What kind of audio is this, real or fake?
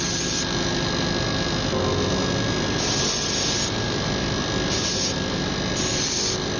real